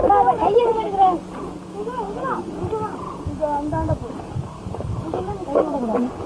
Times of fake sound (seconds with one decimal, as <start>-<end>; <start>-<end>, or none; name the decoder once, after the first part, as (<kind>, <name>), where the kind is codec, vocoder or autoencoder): 0.0-6.3 (codec, DAC)